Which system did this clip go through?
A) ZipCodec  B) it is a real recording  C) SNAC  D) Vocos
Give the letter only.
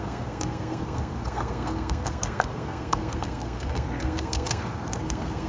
C